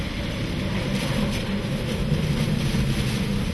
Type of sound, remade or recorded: recorded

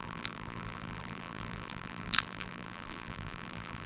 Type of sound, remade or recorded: remade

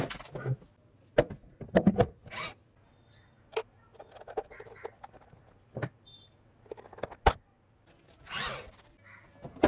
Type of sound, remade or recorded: recorded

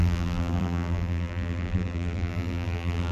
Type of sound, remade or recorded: remade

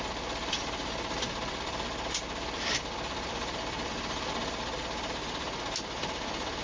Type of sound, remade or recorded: remade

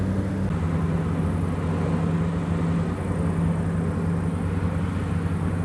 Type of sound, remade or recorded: recorded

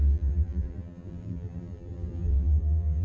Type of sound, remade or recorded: remade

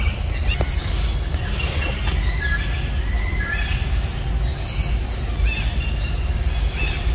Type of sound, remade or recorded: recorded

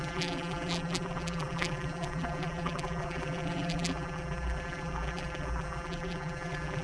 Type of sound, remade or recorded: remade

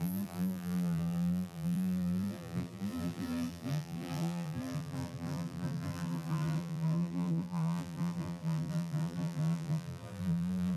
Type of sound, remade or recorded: remade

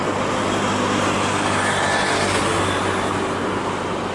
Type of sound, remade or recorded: recorded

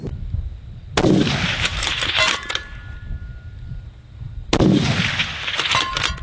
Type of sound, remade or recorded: recorded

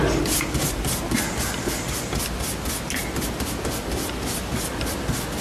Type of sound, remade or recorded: recorded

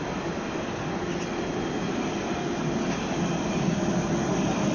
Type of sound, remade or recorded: recorded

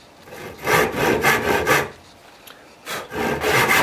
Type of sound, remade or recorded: recorded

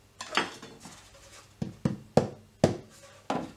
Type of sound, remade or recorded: recorded